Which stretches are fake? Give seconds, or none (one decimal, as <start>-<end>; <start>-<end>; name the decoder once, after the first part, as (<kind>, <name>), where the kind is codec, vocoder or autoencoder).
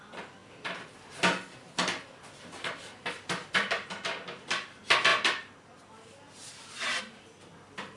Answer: none